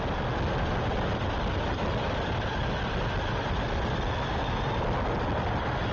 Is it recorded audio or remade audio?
recorded